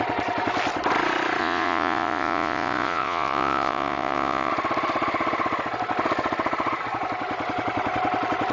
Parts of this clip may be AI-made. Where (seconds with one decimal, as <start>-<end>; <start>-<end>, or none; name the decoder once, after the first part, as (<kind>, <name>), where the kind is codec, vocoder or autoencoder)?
1.4-4.5 (vocoder, Vocos)